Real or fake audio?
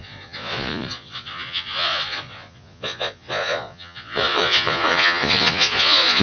fake